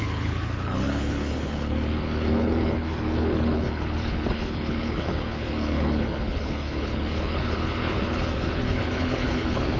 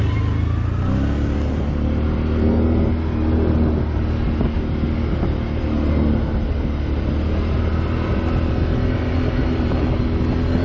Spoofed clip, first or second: first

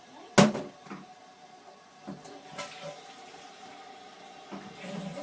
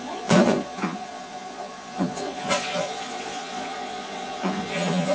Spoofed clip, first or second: second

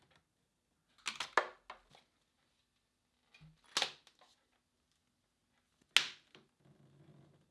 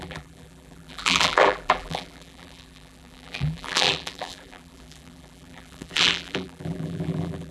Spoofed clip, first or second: second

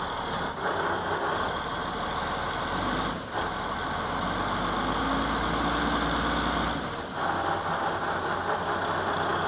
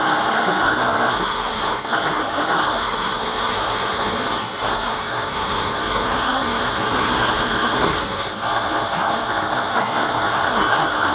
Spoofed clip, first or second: second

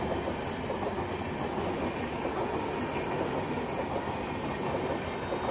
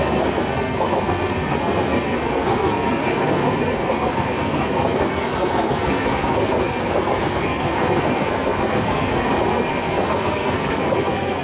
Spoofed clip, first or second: second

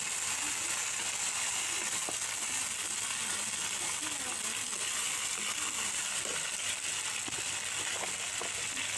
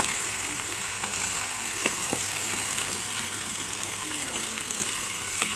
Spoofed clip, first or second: second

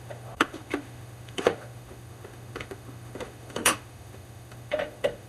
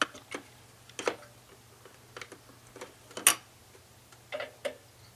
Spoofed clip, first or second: first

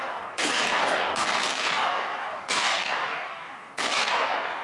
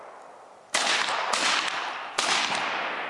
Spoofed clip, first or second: first